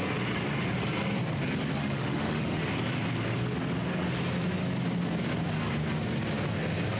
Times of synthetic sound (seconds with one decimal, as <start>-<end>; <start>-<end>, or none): 1.8-2.6

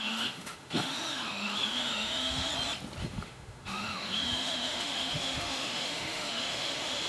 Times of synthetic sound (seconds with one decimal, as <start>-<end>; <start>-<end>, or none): 0.0-2.5; 3.0-7.1

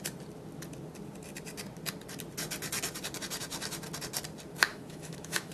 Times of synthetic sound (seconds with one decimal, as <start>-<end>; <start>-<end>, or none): 4.7-5.5

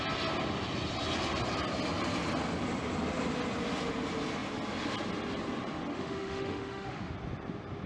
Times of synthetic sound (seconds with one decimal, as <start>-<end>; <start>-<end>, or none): 5.9-7.1

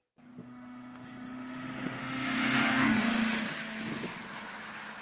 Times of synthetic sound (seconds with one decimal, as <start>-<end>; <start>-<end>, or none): 0.4-3.4